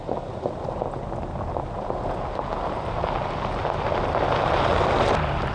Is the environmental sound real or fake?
real